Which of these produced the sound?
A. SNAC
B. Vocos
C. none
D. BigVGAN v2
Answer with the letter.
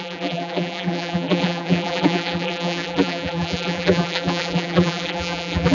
D